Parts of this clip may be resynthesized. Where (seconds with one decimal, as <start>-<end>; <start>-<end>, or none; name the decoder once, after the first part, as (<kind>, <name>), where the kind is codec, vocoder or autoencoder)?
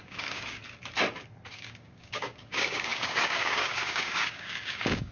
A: 0.0-0.6 (codec, DAC); 1.5-5.1